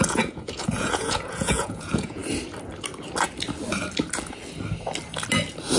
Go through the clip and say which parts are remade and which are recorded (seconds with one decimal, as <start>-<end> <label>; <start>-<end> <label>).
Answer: 0.0-2.2 remade; 2.2-5.8 recorded